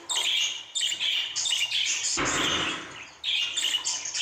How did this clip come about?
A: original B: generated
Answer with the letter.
A